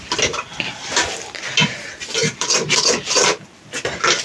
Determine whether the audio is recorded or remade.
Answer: recorded